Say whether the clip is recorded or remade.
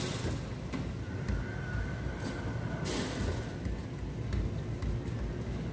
recorded